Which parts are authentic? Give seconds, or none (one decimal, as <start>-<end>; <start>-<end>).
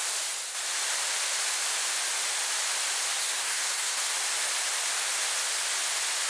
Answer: 0.0-3.2; 4.0-6.3